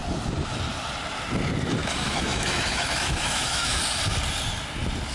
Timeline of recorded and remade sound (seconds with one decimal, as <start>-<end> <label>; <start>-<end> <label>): 0.0-1.8 recorded; 1.8-3.8 remade; 3.8-5.1 recorded